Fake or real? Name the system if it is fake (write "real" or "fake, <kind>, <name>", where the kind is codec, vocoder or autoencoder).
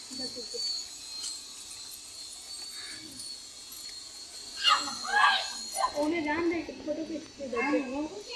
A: real